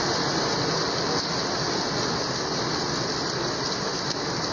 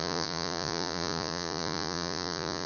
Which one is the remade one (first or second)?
second